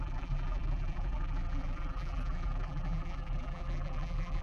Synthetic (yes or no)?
yes